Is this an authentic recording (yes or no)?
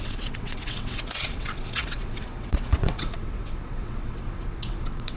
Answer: no